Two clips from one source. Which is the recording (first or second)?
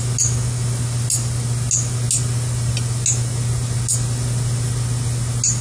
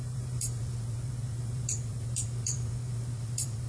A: first